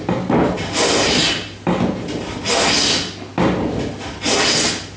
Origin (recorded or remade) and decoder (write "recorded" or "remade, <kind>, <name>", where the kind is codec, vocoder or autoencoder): recorded